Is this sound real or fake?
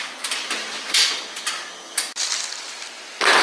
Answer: real